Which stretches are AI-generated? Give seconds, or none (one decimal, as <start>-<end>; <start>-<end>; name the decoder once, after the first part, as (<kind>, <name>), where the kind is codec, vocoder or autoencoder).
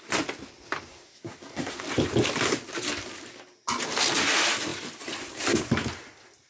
0.9-1.8 (codec, SNAC)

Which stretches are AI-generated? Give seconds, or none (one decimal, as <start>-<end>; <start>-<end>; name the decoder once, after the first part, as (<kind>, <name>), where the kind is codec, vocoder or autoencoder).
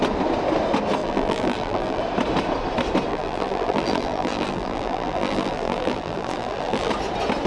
1.0-2.0 (vocoder, BigVGAN v2); 3.1-6.9